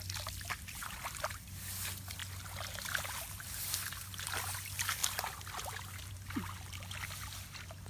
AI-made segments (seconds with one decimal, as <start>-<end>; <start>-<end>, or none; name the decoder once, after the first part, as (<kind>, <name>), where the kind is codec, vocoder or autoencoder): none